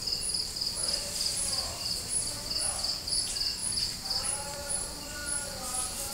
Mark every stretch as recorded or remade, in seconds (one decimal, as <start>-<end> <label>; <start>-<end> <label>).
0.0-3.6 remade; 3.6-4.2 recorded; 4.2-5.2 remade; 5.2-6.1 recorded